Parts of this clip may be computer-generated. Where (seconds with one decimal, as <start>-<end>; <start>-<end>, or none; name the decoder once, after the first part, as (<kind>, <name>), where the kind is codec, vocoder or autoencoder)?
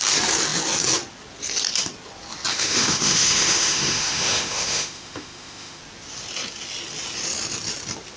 2.5-5.8 (autoencoder, DAC-VAE)